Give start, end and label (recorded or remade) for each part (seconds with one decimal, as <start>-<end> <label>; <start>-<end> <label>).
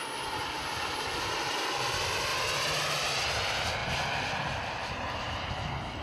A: 0.0-2.3 recorded; 2.3-3.2 remade; 3.2-3.8 recorded; 3.8-5.5 remade; 5.5-6.0 recorded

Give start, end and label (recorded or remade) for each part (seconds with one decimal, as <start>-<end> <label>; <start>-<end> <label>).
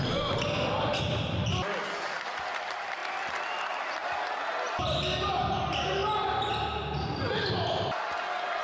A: 0.0-8.6 recorded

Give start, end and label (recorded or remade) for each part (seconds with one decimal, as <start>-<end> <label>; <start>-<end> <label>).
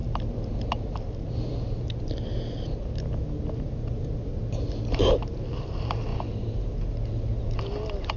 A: 0.0-8.2 recorded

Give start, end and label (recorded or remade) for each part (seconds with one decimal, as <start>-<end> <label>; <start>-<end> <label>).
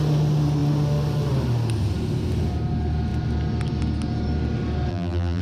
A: 0.0-4.9 recorded; 4.9-5.4 remade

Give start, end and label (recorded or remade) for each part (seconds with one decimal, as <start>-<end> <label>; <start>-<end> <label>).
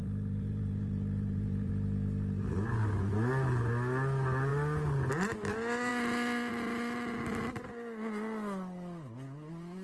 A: 0.0-1.7 remade; 1.7-9.8 recorded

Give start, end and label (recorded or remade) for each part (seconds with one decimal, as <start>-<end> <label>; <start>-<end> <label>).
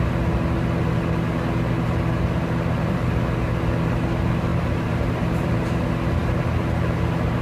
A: 0.0-4.5 recorded; 4.5-5.8 remade; 5.8-7.4 recorded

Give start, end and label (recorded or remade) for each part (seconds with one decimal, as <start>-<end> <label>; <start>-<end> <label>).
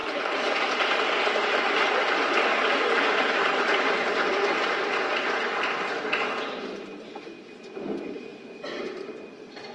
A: 0.0-2.1 remade; 2.1-8.3 recorded; 8.3-8.8 remade; 8.8-9.7 recorded